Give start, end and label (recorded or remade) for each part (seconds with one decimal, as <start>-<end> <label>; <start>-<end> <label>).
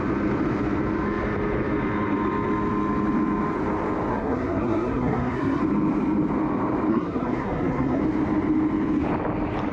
0.0-4.1 recorded; 4.1-5.6 remade; 5.6-6.9 recorded; 6.9-8.0 remade; 8.0-9.7 recorded